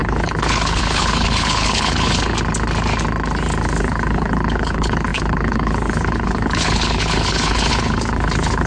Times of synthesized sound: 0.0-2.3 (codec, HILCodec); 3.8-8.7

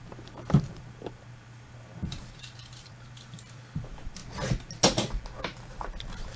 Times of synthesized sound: 0.0-4.2 (vocoder, BigVGAN v2); 5.7-6.4

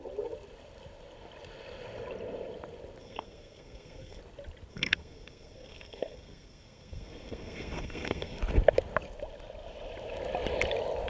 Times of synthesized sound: 3.0-4.2 (codec, SNAC); 4.7-8.4

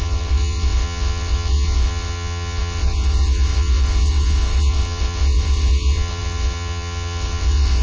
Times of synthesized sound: 0.0-7.8 (vocoder, WaveNeXt)

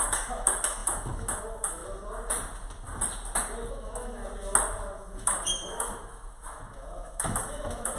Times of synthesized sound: 0.0-1.8 (autoencoder, DAC-VAE); 3.7-4.2; 5.0-8.0